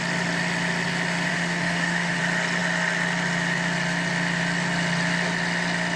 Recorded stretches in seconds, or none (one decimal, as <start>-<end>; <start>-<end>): 0.0-1.3; 2.2-6.0